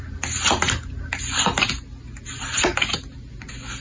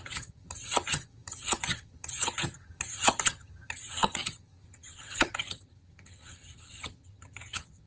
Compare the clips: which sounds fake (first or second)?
second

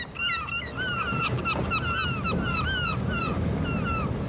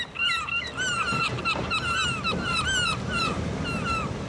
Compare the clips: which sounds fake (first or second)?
second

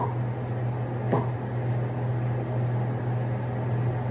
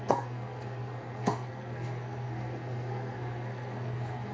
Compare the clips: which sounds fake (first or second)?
second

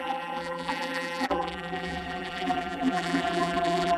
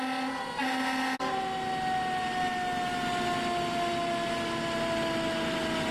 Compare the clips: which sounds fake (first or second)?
first